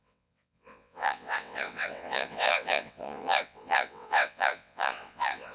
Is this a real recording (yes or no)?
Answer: no